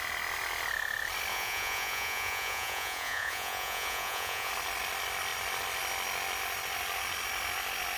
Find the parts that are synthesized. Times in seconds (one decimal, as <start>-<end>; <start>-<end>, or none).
1.3-4.5